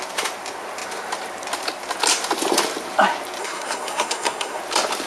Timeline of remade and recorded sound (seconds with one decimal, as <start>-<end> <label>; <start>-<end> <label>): 0.0-3.4 recorded; 3.4-4.6 remade; 4.6-5.1 recorded